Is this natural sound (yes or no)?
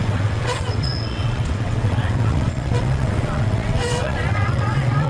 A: no